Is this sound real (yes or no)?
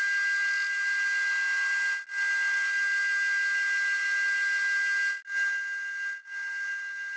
yes